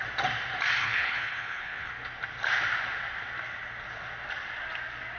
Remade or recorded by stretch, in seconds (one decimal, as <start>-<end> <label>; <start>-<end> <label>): 0.0-0.8 recorded; 0.8-1.9 remade; 1.9-5.2 recorded